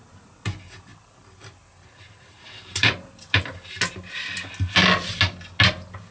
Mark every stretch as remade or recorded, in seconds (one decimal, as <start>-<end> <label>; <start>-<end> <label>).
0.0-0.9 recorded; 0.9-3.7 remade; 3.7-6.1 recorded